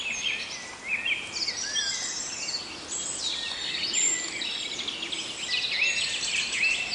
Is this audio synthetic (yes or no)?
no